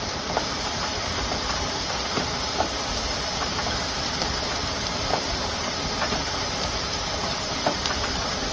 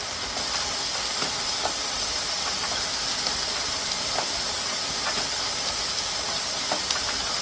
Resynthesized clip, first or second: first